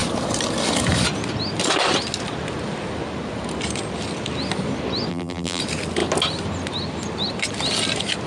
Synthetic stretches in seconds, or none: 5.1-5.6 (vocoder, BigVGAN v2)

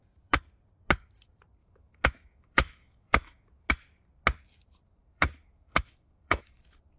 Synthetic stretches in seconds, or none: 1.6-3.7 (autoencoder, DAC-VAE); 5.0-6.6

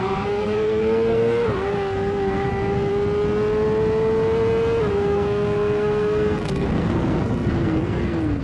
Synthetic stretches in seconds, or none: 0.0-2.9 (codec, SNAC); 4.9-8.4

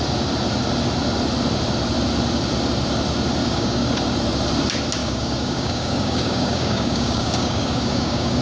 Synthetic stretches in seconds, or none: 3.4-3.9 (codec, DAC); 5.0-8.4

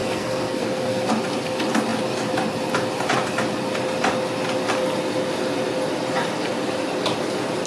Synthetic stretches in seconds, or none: 0.0-1.1 (codec, SNAC)

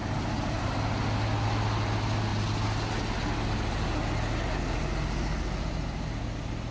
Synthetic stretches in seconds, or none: none

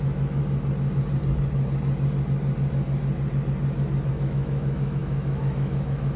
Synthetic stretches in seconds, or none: 0.0-0.4 (autoencoder, DAC-VAE); 4.1-6.2